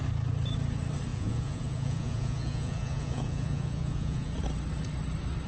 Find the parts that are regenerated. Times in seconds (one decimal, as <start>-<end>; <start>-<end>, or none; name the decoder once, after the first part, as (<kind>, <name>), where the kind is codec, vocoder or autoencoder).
1.1-4.3 (vocoder, Vocos)